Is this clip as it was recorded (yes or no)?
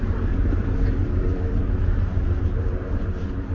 no